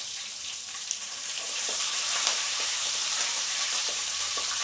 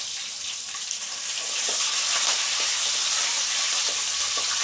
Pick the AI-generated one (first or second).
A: first